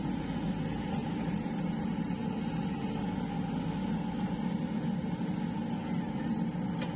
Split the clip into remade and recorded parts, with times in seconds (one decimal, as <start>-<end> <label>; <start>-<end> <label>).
0.0-7.0 recorded